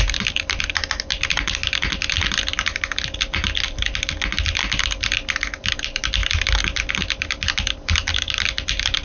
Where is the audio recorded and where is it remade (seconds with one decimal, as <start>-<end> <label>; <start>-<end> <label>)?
0.0-9.0 recorded